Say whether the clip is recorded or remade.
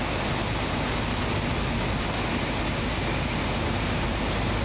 recorded